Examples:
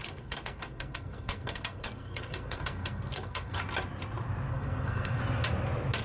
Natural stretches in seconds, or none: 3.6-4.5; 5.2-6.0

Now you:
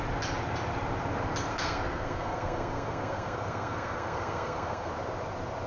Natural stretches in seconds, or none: 0.0-1.5; 4.9-5.7